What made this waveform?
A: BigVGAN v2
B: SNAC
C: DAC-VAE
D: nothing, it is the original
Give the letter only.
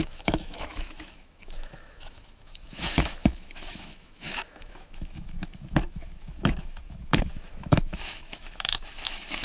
C